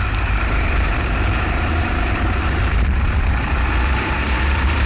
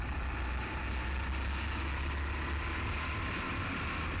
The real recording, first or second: second